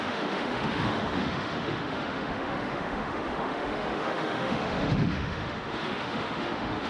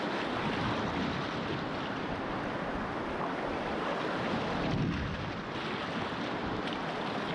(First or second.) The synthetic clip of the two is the first